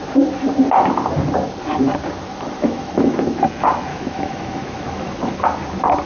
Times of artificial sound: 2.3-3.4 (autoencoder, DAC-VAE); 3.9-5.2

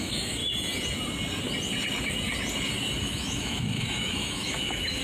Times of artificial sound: 0.0-0.4 (autoencoder, DAC-VAE); 3.0-5.0

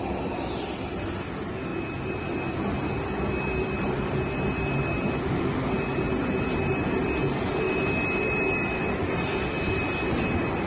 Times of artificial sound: 5.2-5.7 (autoencoder, DAC-VAE)

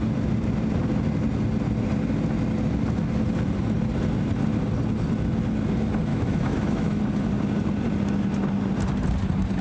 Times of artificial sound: 6.1-7.0 (autoencoder, DAC-VAE)

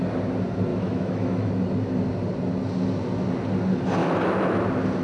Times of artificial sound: 0.7-1.5 (autoencoder, DAC-VAE); 4.0-4.6